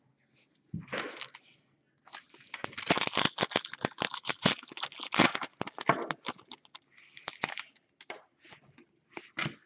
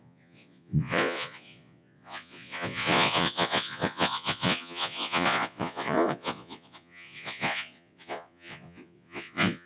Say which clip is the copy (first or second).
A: second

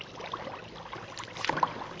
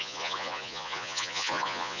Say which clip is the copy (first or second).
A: second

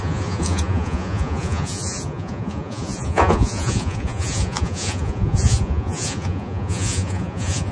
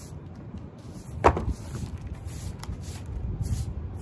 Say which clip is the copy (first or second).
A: first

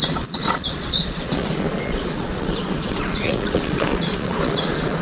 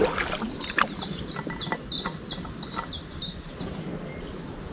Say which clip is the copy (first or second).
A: first